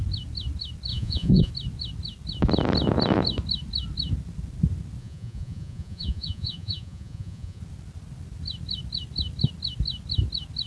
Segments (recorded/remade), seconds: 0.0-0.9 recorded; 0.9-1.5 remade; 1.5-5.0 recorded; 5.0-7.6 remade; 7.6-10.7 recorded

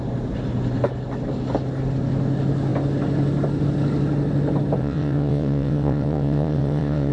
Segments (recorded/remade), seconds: 0.0-4.8 recorded; 4.8-7.1 remade

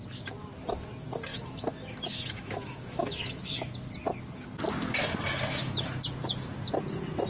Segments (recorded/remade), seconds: 0.0-1.3 recorded; 1.3-3.4 remade; 3.4-7.3 recorded

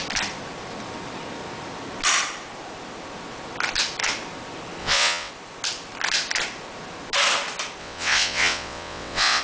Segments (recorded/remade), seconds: 0.0-4.8 recorded; 4.8-5.3 remade; 5.3-7.8 recorded; 7.8-9.4 remade

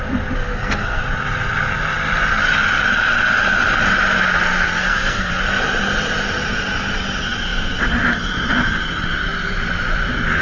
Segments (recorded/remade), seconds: 0.0-0.5 recorded; 0.5-1.0 remade; 1.0-4.8 recorded; 4.8-5.3 remade; 5.3-10.4 recorded

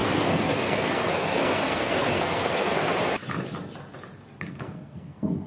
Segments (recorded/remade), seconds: 0.0-2.9 remade; 2.9-4.5 recorded; 4.5-5.5 remade

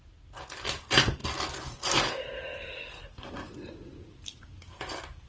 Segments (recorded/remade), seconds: 0.0-5.3 recorded

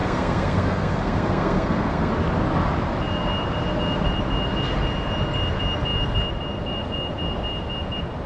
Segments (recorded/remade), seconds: 0.0-2.1 remade; 2.1-8.3 recorded